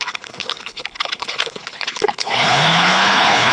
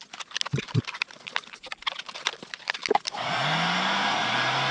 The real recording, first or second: second